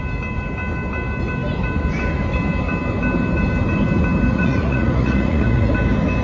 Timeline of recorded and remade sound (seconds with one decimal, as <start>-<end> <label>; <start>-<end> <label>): 0.0-4.3 recorded; 4.3-5.7 remade; 5.7-6.2 recorded